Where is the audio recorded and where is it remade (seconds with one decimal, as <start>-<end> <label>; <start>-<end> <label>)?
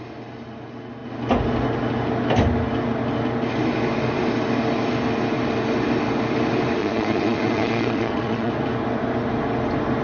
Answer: 0.0-6.8 recorded; 6.8-8.5 remade; 8.5-10.0 recorded